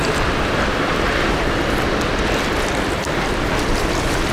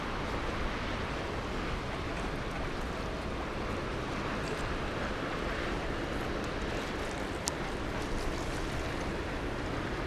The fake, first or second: first